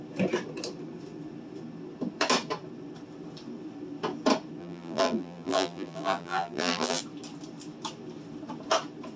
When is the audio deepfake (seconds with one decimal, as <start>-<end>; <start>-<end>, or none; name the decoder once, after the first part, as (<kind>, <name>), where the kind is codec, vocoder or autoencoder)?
4.6-7.0 (vocoder, BigVGAN v2)